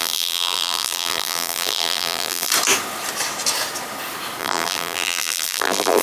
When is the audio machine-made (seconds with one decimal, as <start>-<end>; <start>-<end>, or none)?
0.0-2.5; 4.4-6.0

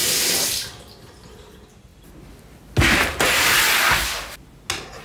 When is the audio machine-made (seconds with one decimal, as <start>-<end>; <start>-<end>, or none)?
0.0-1.3

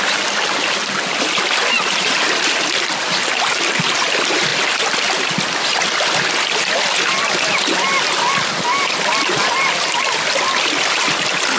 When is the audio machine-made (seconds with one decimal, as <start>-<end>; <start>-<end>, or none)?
none

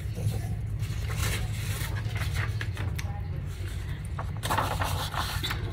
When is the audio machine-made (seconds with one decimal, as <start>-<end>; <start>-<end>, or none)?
none

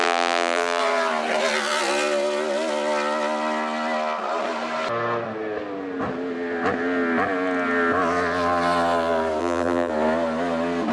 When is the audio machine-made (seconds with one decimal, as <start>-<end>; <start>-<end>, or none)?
0.0-0.8; 9.4-9.9

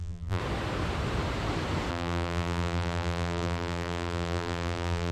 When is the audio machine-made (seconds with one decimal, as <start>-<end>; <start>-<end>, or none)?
0.0-0.4; 1.9-5.1

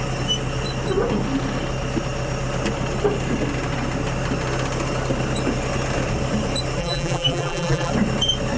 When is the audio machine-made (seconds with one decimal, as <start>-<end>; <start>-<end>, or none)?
6.8-7.9